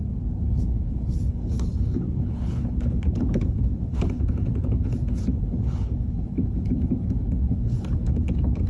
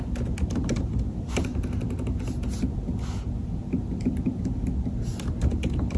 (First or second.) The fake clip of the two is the first